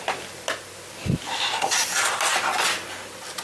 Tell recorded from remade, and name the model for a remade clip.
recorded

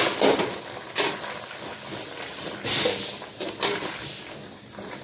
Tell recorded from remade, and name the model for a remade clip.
recorded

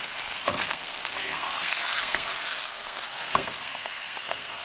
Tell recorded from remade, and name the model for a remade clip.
remade, codec, SNAC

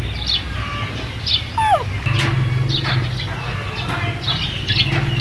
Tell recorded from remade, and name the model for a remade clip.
recorded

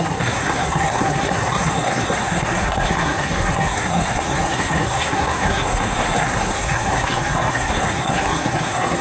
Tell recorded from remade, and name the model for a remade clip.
remade, codec, SNAC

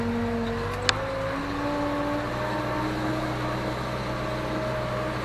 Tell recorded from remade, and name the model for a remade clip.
recorded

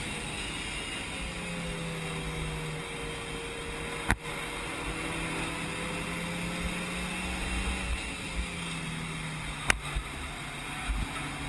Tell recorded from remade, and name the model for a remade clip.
recorded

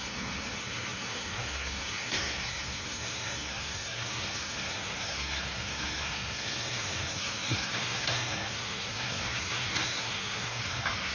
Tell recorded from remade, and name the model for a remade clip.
remade, codec, SNAC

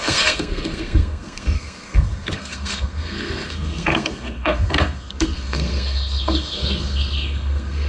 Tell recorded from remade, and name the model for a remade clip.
remade, codec, SNAC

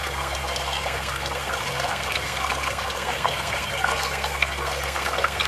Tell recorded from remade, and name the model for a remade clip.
remade, codec, SNAC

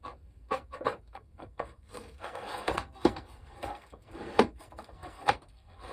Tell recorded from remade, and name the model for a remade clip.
remade, codec, SNAC